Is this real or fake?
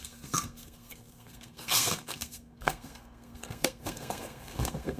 fake